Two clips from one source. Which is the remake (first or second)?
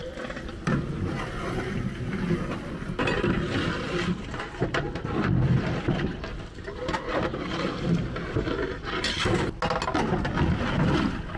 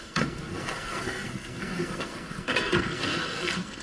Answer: second